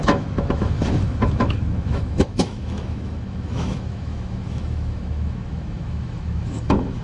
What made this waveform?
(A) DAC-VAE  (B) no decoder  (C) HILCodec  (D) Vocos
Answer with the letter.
A